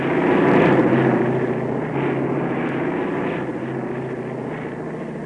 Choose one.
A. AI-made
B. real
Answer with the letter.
B